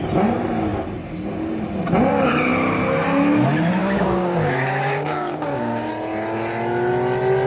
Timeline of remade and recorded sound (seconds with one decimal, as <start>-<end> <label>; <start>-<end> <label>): 0.0-3.8 recorded; 3.8-5.9 remade; 5.9-7.5 recorded